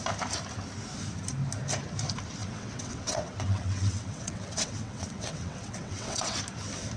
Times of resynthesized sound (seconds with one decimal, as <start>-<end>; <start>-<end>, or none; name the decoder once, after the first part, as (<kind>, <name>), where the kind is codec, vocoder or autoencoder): 2.4-6.4 (vocoder, WaveNeXt)